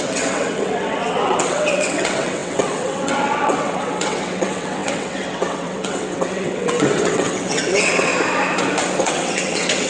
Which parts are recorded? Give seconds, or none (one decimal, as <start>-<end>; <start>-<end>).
8.1-9.0